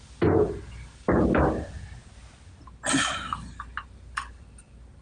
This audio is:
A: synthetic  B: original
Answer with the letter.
B